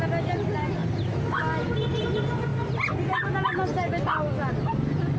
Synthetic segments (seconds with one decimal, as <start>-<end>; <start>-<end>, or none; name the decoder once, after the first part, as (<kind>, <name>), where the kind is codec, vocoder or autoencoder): none